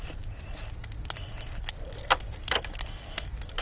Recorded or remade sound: recorded